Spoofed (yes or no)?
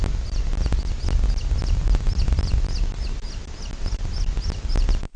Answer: no